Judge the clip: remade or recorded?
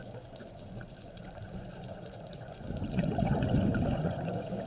remade